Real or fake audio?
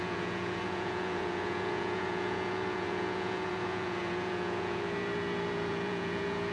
fake